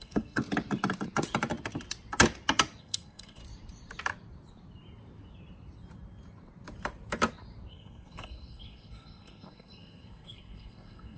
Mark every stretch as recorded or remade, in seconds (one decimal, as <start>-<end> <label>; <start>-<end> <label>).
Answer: 0.0-0.4 remade; 0.4-2.8 recorded; 2.8-3.4 remade; 3.4-7.7 recorded; 7.7-11.2 remade